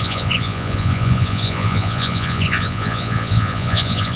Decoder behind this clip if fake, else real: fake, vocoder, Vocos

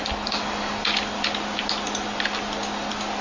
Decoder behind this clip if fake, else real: real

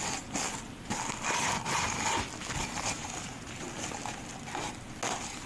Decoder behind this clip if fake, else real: real